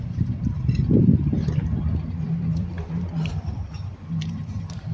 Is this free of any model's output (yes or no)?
no